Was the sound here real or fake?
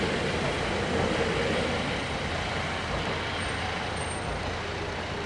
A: real